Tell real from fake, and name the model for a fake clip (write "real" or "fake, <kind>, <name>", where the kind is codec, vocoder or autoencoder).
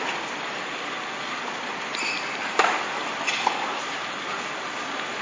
real